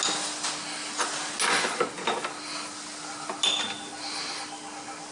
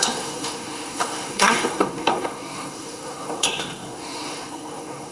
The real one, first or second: first